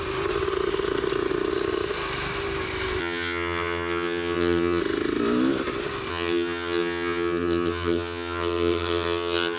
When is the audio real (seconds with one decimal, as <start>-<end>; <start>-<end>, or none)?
0.0-3.0; 4.8-6.1

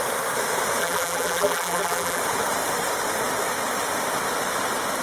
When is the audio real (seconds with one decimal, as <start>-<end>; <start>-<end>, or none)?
0.0-0.8; 2.2-5.0

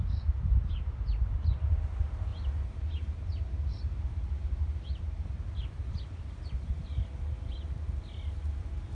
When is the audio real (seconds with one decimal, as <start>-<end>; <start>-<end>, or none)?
1.9-2.3; 5.8-8.9

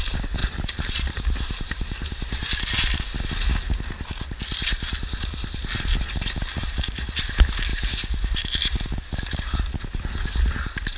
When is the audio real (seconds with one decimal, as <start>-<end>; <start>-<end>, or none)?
0.0-0.4; 3.3-6.6; 7.3-7.7; 8.9-11.0